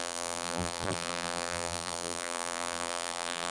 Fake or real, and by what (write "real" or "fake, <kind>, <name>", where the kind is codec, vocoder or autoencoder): fake, vocoder, BigVGAN v2